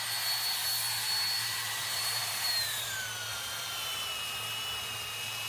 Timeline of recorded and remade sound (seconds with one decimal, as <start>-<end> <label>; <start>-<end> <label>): 0.0-1.4 recorded; 1.4-2.9 remade; 2.9-3.3 recorded; 3.3-4.1 remade; 4.1-5.5 recorded

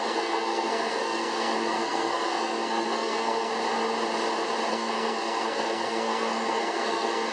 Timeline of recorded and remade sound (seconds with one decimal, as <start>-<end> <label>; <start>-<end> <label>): 0.0-3.5 remade; 3.5-4.7 recorded; 4.7-7.3 remade

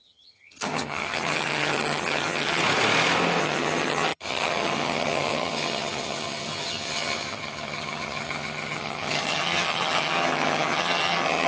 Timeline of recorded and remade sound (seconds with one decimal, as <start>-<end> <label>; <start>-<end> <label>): 0.0-2.6 remade; 2.6-3.4 recorded; 3.4-11.5 remade